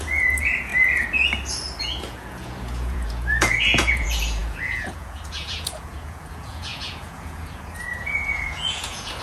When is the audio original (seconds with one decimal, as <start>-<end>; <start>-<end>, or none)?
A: 0.7-1.8